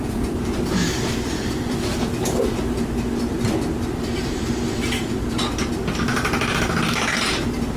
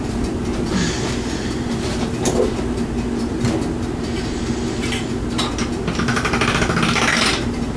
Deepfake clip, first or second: first